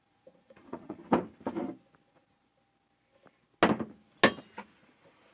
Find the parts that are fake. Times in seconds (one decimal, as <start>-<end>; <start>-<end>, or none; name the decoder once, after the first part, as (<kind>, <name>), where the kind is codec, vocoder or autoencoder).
0.0-1.0 (vocoder, Vocos); 2.1-2.5; 4.7-5.3